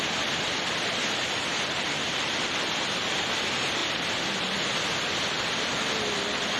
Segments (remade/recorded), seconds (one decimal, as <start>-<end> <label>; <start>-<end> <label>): 0.0-6.6 recorded